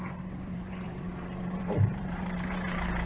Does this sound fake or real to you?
fake